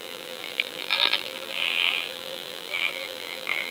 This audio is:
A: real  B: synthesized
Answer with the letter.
B